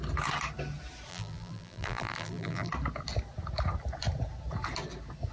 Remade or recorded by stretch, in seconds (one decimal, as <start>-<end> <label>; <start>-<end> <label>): 0.0-1.1 recorded; 1.1-2.7 remade; 2.7-5.3 recorded